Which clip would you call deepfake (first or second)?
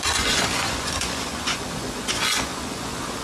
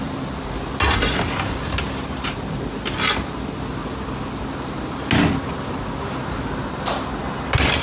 first